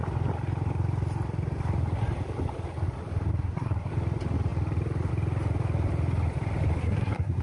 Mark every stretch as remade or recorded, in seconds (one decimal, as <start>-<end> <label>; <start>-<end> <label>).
0.0-3.3 recorded; 3.3-3.9 remade; 3.9-6.8 recorded; 6.8-7.4 remade